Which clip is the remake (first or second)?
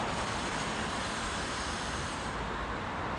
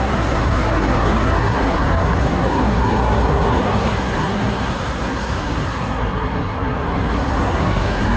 second